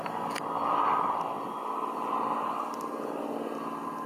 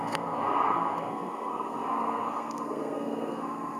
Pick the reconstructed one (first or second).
second